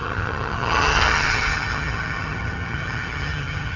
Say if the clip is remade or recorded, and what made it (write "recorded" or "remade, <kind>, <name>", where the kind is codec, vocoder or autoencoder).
remade, vocoder, HiFi-GAN